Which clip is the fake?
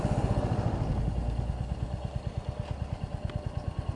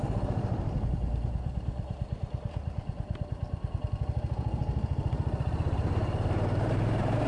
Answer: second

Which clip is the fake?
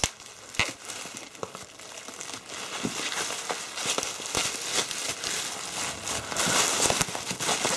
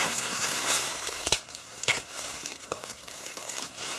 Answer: second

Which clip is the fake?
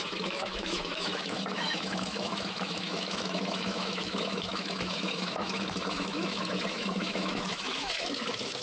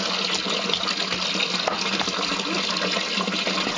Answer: first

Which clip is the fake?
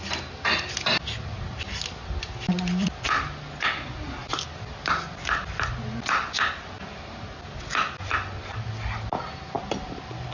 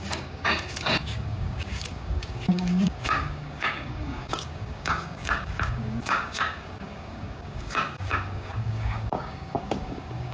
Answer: second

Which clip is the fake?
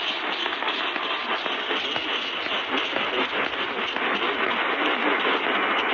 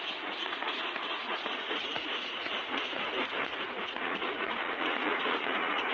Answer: second